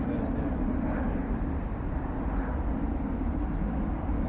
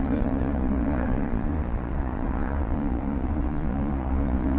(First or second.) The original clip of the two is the first